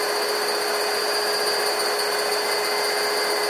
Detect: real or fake real